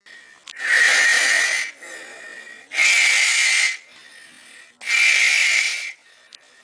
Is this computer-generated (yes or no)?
no